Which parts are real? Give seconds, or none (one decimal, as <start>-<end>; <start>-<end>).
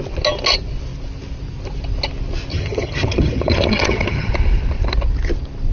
0.0-2.5; 4.3-5.7